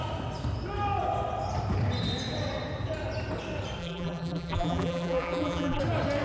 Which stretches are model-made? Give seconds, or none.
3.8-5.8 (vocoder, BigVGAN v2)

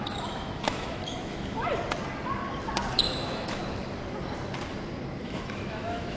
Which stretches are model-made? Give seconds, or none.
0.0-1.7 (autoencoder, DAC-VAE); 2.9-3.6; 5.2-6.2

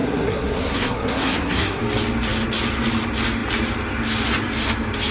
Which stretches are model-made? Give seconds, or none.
0.0-1.8 (codec, SNAC)

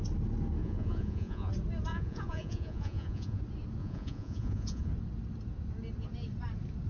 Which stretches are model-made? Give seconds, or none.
0.6-1.5 (vocoder, Vocos); 1.9-3.4; 3.8-4.9

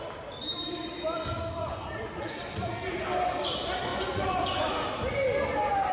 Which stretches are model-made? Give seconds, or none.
1.6-3.0 (vocoder, Vocos); 3.9-4.7

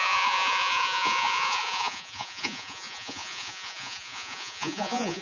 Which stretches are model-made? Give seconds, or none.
0.0-5.2 (vocoder, Vocos)

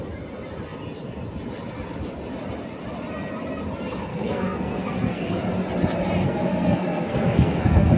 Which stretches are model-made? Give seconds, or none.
4.1-5.4 (codec, SNAC); 6.2-8.0